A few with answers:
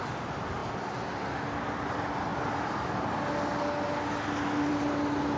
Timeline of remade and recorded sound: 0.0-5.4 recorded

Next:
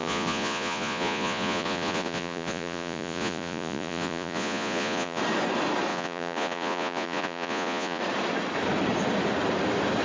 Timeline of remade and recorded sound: 0.0-5.2 remade; 5.2-5.9 recorded; 5.9-8.0 remade; 8.0-10.0 recorded

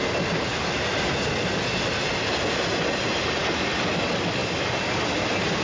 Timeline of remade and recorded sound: 0.0-5.6 recorded

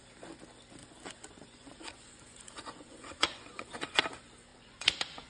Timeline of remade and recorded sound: 0.0-0.8 recorded; 0.8-4.0 remade; 4.0-4.5 recorded; 4.5-5.3 remade